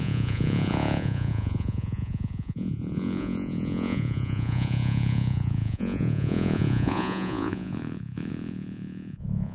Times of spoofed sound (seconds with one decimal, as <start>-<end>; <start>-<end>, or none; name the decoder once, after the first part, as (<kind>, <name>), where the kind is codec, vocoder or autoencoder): 0.0-9.5 (vocoder, Vocos)